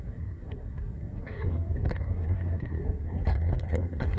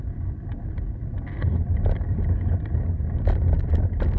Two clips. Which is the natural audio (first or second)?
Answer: second